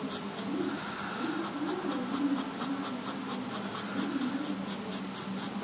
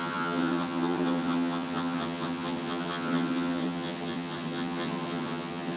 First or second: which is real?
first